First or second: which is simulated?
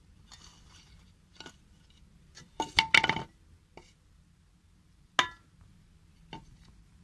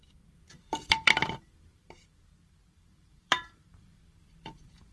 second